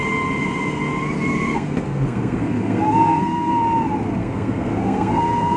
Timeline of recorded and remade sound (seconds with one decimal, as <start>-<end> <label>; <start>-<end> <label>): 0.0-1.3 recorded; 1.3-3.5 remade; 3.5-4.2 recorded; 4.2-5.6 remade